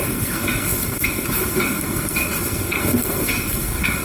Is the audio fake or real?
fake